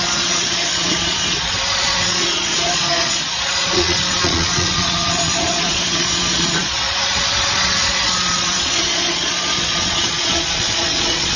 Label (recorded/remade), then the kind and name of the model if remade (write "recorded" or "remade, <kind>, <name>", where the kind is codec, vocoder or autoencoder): remade, vocoder, Vocos